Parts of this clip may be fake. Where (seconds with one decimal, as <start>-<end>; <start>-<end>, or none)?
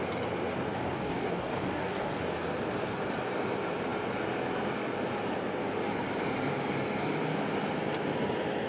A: 0.7-2.2